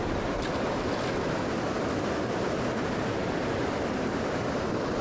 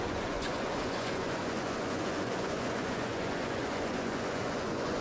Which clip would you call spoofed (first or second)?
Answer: second